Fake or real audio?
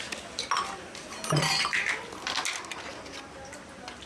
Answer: real